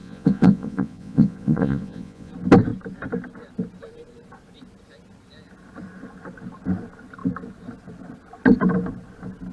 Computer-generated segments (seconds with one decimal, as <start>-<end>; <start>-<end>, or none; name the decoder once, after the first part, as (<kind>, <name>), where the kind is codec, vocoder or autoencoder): 0.0-2.3 (vocoder, Vocos)